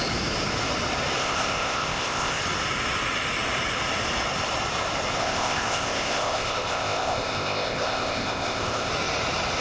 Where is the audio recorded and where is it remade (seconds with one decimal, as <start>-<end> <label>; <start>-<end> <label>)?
0.0-1.2 recorded; 1.2-2.4 remade; 2.4-5.2 recorded; 5.2-8.9 remade; 8.9-9.6 recorded